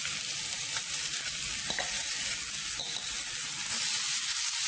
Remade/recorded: recorded